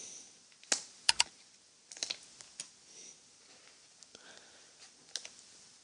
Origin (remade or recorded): recorded